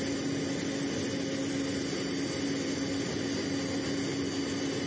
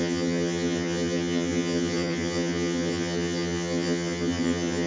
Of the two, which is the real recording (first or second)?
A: first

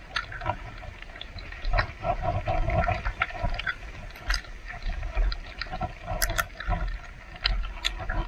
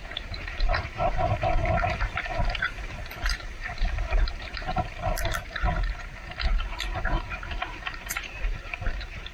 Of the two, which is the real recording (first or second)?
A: first